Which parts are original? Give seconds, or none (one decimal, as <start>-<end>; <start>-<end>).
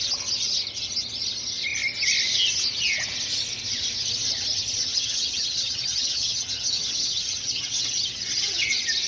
0.0-4.9; 8.7-9.1